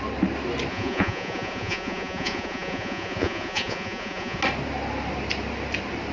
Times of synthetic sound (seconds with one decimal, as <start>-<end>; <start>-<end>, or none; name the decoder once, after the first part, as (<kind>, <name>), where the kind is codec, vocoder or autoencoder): 0.7-4.4 (vocoder, Vocos)